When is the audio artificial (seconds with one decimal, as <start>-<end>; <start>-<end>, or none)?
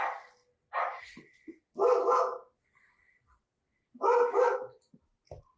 none